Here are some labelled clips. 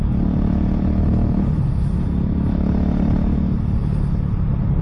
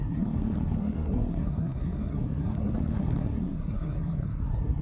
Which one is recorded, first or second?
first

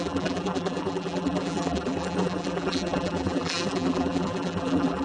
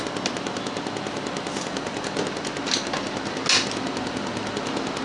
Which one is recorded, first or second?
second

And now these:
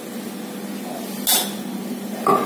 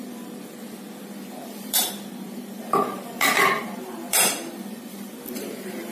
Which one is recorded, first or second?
first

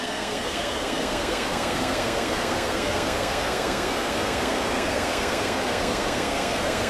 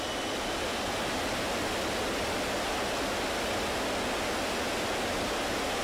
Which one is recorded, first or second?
second